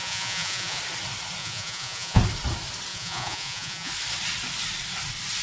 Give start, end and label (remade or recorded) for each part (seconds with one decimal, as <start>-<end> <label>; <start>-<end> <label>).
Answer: 0.0-0.8 remade; 0.8-1.4 recorded; 1.4-2.2 remade; 2.2-2.9 recorded; 2.9-3.9 remade; 3.9-5.4 recorded